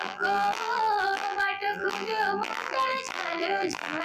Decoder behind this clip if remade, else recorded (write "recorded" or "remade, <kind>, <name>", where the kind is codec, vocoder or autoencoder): remade, vocoder, BigVGAN v2